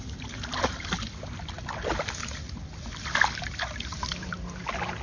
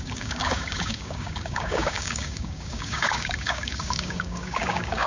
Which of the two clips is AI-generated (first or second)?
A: second